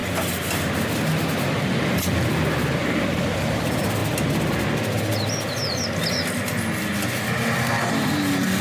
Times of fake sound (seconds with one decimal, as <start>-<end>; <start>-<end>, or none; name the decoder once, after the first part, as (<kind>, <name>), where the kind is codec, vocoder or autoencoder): none